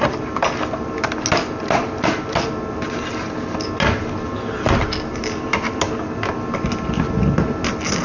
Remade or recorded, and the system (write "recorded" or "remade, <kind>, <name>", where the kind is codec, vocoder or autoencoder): recorded